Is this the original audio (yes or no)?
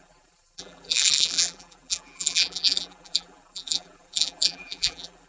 no